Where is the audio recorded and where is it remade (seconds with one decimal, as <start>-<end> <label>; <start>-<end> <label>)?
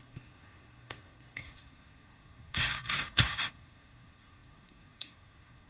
0.0-5.7 remade